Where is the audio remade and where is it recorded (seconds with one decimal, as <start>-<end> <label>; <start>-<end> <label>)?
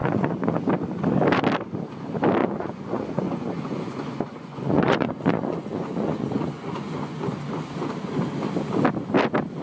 0.0-0.6 remade; 0.6-2.4 recorded; 2.4-7.2 remade; 7.2-9.6 recorded